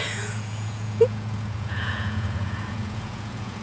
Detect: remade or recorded remade